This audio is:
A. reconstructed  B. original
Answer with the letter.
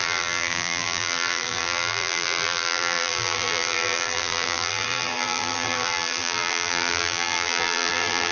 A